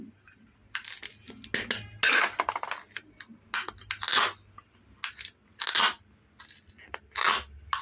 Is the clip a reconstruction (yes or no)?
no